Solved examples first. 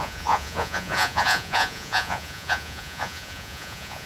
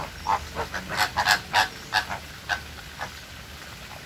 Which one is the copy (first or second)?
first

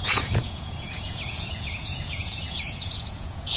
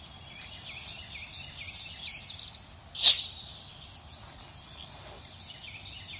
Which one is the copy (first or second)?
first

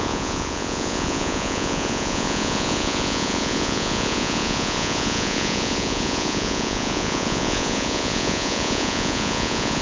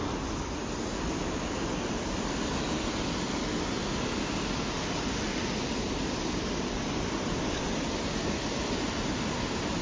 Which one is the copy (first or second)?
first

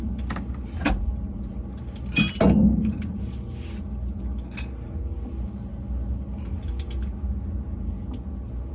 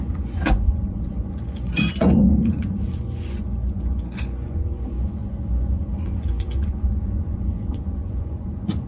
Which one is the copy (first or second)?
second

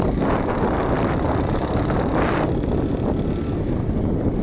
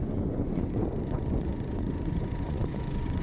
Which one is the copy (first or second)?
second